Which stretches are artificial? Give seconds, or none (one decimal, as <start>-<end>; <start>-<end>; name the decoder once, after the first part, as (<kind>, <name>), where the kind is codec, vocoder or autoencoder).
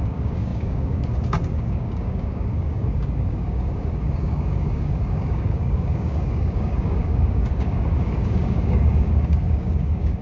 0.0-10.2 (codec, DAC)